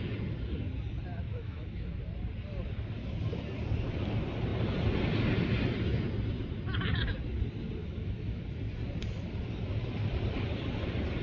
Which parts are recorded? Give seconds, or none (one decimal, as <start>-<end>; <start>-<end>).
0.0-1.3; 2.0-7.8; 8.4-11.2